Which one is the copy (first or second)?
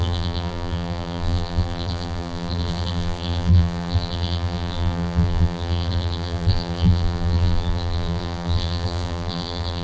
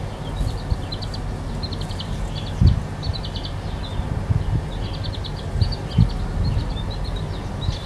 first